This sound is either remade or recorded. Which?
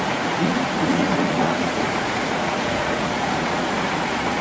remade